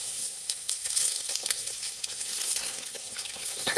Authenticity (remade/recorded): remade